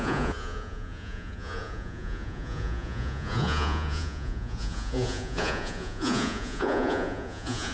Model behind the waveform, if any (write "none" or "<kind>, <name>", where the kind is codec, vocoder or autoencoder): vocoder, Vocos